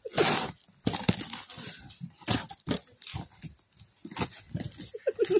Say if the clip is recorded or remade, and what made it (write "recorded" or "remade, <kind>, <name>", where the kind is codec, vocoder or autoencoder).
recorded